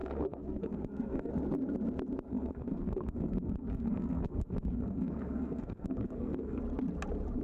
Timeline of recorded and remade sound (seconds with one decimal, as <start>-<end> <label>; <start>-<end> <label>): 0.0-1.3 remade; 1.3-2.3 recorded; 2.3-6.6 remade; 6.6-7.4 recorded